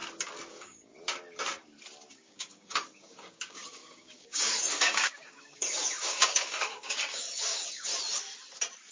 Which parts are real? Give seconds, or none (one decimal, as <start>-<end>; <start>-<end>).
0.0-0.5; 0.9-2.1; 7.9-8.9